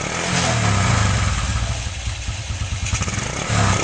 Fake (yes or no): no